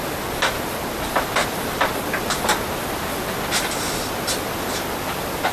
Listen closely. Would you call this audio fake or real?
real